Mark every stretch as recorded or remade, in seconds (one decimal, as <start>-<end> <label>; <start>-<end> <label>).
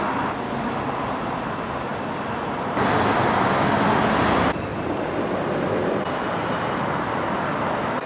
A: 0.0-4.7 recorded; 4.7-6.0 remade; 6.0-8.1 recorded